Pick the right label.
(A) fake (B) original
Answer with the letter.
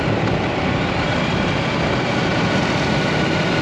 B